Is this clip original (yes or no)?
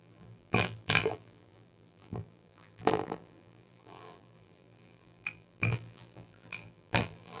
no